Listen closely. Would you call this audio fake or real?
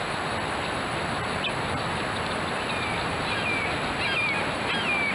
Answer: real